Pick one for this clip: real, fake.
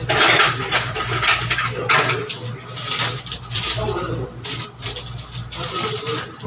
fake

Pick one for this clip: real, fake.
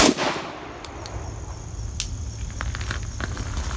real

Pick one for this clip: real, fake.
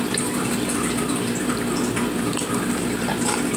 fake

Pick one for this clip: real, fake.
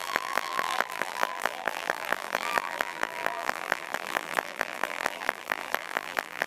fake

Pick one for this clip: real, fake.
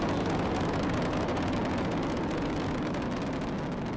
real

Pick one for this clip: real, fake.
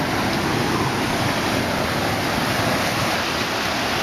real